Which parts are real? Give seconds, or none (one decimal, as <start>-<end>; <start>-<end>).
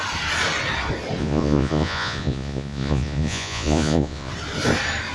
0.0-1.2; 4.3-5.1